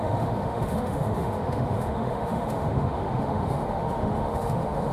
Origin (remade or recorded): remade